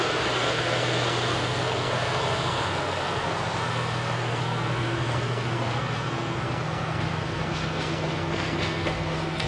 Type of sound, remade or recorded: remade